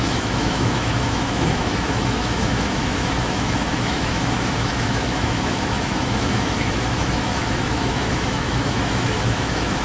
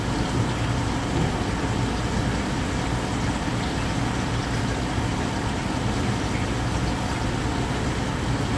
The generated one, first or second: first